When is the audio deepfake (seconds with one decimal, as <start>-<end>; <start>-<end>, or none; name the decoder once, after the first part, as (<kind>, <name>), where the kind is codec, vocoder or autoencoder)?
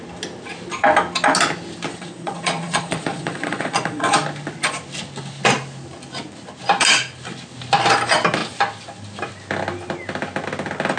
1.9-4.1 (vocoder, Vocos)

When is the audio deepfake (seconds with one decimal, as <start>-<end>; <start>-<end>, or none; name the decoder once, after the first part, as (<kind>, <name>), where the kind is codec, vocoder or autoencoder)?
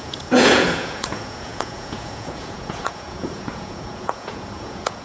0.0-5.0 (vocoder, Vocos)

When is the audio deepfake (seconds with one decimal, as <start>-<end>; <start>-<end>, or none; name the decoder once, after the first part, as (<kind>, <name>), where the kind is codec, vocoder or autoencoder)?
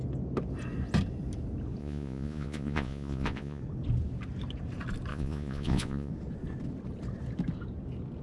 1.8-3.6 (vocoder, Vocos); 5.1-6.1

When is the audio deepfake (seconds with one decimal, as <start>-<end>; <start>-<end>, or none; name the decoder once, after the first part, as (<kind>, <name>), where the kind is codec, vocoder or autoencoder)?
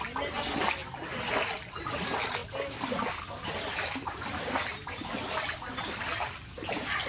none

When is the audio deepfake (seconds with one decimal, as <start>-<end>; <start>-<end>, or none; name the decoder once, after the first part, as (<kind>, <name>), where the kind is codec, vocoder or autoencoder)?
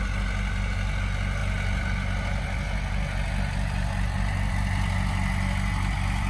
none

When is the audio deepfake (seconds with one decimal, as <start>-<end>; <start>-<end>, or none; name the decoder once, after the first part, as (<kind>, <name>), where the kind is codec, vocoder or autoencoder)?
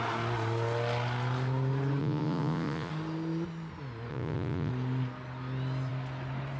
2.0-2.9 (vocoder, Vocos); 4.1-4.7